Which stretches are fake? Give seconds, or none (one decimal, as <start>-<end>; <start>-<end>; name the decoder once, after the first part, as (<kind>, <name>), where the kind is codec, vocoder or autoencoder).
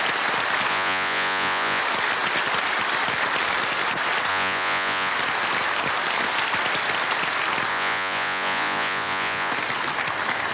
0.7-1.8 (vocoder, Vocos); 4.3-5.1; 7.7-9.5